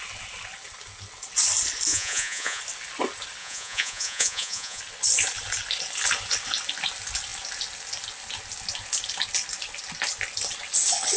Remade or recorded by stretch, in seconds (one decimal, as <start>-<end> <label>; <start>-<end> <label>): 0.0-1.9 recorded; 1.9-2.6 remade; 2.6-3.4 recorded; 3.4-4.8 remade; 4.8-11.2 recorded